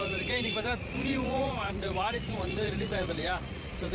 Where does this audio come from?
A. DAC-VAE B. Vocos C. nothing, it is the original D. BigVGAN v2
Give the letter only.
B